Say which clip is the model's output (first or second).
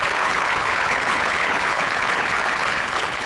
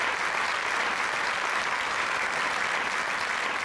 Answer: first